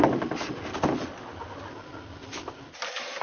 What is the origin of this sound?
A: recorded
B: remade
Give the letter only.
A